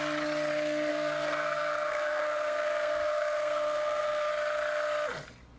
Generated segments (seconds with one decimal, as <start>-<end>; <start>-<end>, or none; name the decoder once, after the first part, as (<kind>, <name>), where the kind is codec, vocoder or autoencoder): 0.9-4.3 (codec, SNAC)